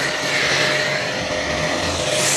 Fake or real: real